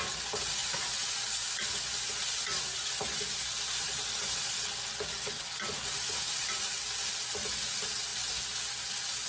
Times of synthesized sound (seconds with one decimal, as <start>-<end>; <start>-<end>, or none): none